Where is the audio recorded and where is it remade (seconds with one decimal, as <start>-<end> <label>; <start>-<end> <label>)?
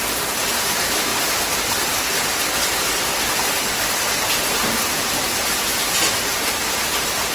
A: 0.0-1.1 remade; 1.1-1.8 recorded; 1.8-5.7 remade; 5.7-7.3 recorded